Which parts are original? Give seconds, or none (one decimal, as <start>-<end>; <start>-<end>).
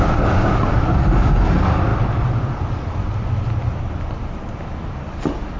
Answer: 0.0-5.6